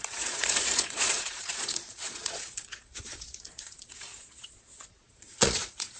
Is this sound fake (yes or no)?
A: yes